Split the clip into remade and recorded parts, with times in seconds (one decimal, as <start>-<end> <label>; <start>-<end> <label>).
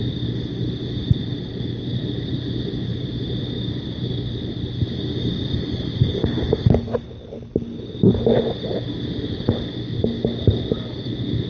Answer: 0.0-6.0 recorded; 6.0-6.5 remade; 6.5-11.5 recorded